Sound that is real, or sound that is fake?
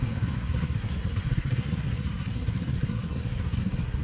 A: fake